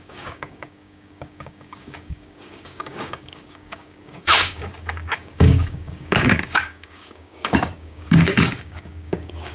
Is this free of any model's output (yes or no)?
no